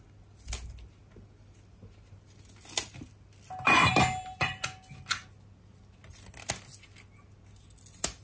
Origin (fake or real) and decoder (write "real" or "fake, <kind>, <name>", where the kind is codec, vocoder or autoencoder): real